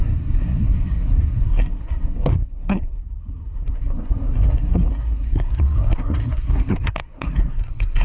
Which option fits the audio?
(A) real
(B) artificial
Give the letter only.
B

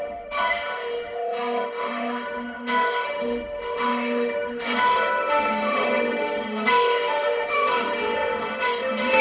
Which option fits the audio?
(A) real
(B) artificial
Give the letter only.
B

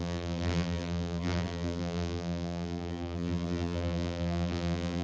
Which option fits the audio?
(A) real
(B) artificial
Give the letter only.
B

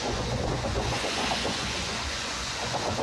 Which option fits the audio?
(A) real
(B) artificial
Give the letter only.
B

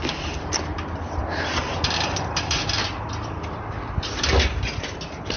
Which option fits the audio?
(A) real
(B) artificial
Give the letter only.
A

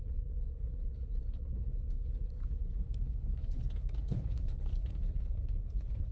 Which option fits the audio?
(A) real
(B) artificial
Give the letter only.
B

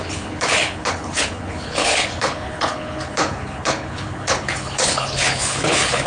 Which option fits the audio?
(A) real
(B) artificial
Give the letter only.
B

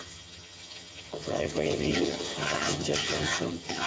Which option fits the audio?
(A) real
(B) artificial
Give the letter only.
B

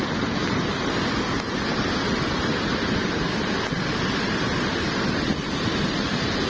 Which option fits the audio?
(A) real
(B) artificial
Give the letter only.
A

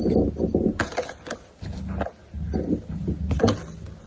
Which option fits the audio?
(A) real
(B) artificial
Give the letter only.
A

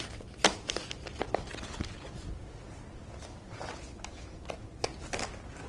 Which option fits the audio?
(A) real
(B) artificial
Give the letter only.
A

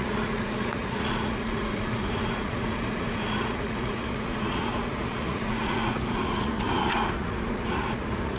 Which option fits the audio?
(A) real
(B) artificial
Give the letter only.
B